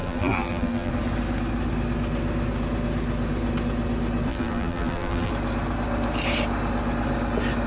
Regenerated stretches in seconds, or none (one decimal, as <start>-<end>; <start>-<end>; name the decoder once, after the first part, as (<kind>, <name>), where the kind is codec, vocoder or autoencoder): 0.0-0.9 (vocoder, BigVGAN v2); 4.3-5.3